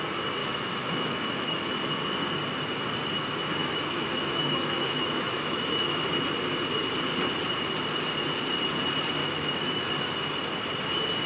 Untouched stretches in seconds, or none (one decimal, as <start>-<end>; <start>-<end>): 0.0-0.4; 1.6-3.6; 6.0-9.2; 9.9-11.3